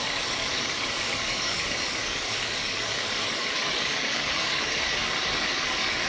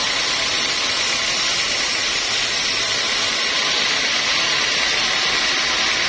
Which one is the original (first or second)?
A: second